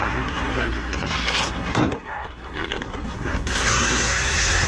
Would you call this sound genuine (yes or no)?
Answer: no